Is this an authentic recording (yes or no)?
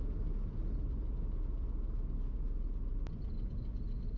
yes